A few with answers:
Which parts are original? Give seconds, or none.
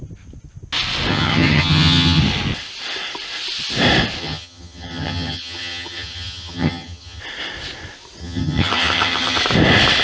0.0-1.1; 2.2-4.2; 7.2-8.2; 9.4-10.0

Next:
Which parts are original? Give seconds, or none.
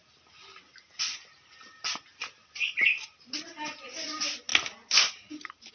0.0-5.7